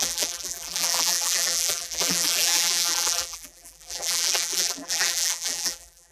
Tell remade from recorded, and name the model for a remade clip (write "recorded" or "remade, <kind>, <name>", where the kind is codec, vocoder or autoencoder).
remade, vocoder, BigVGAN v2